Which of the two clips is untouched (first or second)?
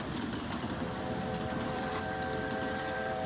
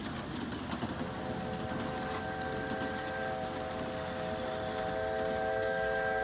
second